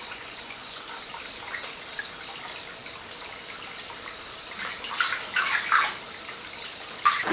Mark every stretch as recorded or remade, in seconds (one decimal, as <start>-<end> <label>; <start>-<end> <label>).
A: 0.0-0.8 remade; 0.8-7.3 recorded

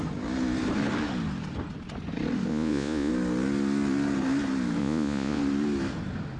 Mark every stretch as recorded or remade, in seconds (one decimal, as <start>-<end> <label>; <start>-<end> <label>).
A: 0.0-2.5 recorded; 2.5-3.1 remade; 3.1-4.8 recorded; 4.8-5.4 remade; 5.4-6.4 recorded